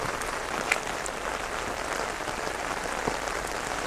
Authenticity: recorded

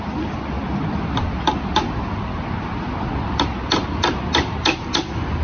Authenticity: recorded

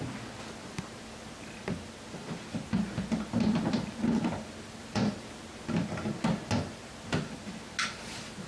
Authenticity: recorded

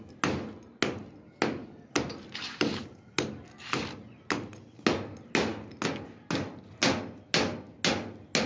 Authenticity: recorded